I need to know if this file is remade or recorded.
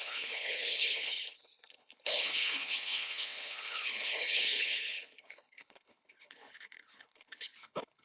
remade